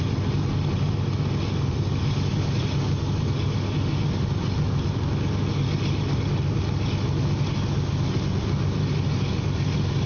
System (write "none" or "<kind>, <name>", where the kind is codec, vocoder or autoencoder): none